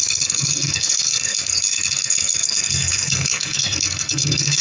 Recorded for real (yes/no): no